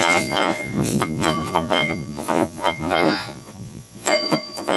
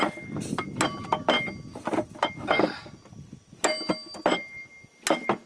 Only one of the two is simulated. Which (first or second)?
first